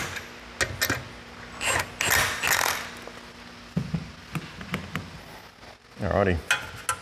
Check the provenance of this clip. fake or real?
real